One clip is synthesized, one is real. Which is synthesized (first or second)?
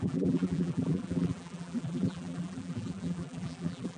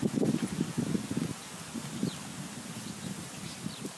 first